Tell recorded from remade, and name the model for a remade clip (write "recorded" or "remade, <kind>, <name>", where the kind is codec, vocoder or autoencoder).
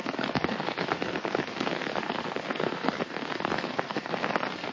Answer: remade, codec, SNAC